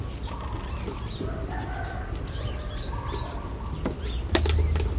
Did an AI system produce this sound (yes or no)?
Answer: no